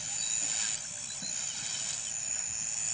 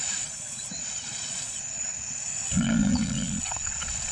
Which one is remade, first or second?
second